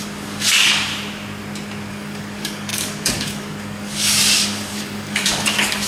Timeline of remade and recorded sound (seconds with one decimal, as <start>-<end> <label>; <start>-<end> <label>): 0.0-0.9 remade; 0.9-1.9 recorded; 1.9-5.9 remade